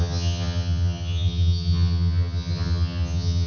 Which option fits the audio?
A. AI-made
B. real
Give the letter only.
A